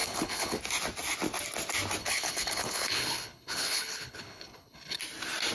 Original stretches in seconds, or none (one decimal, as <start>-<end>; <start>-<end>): 0.6-2.0; 5.0-5.5